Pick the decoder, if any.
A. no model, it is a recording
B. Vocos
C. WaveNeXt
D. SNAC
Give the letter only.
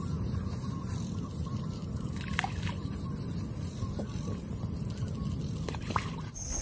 A